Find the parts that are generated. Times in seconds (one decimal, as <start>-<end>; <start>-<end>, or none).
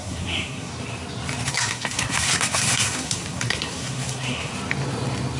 0.0-0.7; 1.5-4.5